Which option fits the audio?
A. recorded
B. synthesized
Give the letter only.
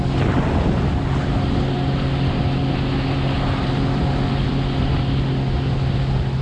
A